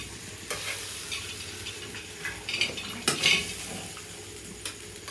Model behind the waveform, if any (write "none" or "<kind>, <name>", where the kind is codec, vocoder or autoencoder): none